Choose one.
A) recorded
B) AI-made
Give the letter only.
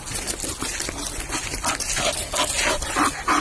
A